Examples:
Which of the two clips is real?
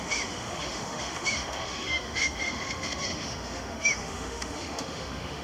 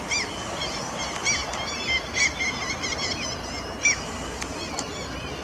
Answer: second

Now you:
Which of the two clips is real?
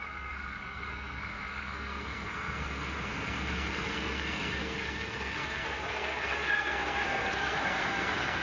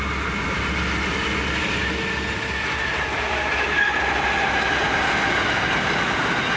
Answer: second